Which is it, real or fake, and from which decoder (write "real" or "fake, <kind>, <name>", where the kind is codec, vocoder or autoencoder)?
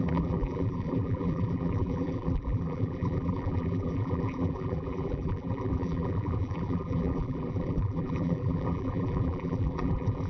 fake, vocoder, BigVGAN v2